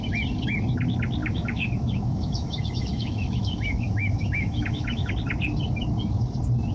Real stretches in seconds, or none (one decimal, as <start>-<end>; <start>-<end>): 0.0-1.2; 5.1-6.7